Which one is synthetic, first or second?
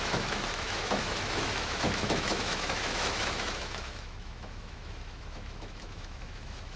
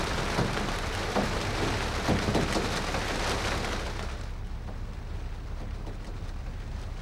first